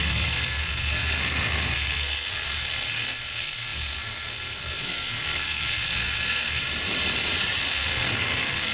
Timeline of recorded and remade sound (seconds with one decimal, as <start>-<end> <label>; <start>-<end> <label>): 0.0-6.6 remade; 6.6-7.6 recorded; 7.6-8.7 remade